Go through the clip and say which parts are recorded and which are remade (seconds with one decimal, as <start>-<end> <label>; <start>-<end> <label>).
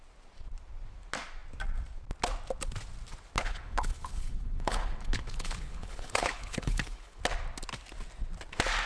0.0-3.4 recorded; 3.4-7.2 remade; 7.2-8.9 recorded